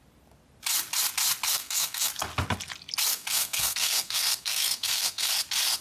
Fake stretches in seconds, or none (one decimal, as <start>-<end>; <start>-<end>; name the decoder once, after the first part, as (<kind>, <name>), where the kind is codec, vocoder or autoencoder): 1.5-2.1 (codec, SNAC); 3.1-5.3